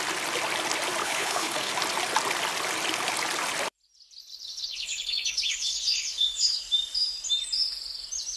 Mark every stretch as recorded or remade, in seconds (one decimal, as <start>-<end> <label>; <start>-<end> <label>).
0.0-1.0 recorded; 1.0-1.7 remade; 1.7-4.2 recorded; 4.2-6.6 remade; 6.6-8.4 recorded